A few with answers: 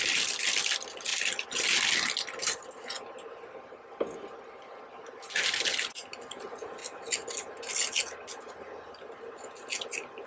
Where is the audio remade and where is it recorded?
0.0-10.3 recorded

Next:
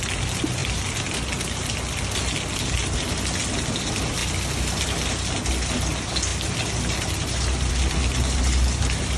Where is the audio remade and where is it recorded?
0.0-0.6 recorded; 0.6-1.3 remade; 1.3-4.2 recorded; 4.2-5.1 remade; 5.1-6.3 recorded; 6.3-7.7 remade; 7.7-9.2 recorded